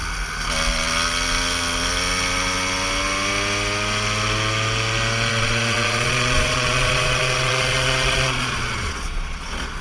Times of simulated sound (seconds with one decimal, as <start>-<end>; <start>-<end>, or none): 5.3-9.8